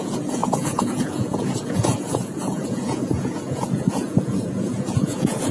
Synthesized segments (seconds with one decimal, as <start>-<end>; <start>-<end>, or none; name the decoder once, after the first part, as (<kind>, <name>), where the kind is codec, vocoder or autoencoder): 0.0-5.5 (vocoder, Vocos)